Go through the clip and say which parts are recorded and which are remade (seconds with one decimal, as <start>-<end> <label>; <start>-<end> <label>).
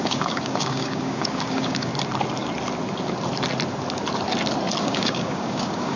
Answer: 0.0-1.9 remade; 1.9-4.8 recorded; 4.8-6.0 remade